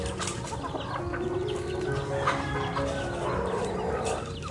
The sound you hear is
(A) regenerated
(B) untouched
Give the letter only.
B